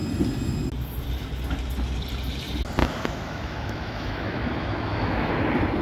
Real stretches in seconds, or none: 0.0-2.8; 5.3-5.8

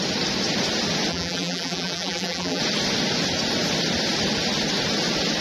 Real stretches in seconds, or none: 0.0-1.1; 2.6-5.4

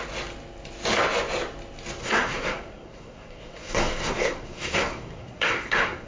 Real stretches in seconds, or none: 0.0-2.0